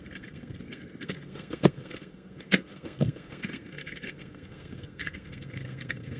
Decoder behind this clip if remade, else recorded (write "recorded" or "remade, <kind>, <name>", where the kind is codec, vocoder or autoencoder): remade, codec, SNAC